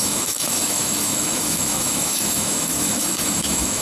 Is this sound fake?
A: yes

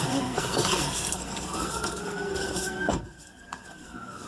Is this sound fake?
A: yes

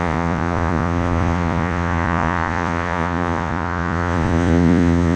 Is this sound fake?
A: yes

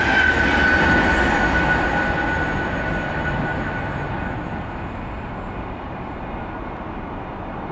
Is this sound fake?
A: no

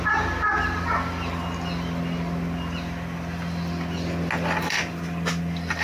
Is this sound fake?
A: no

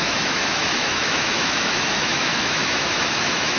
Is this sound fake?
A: yes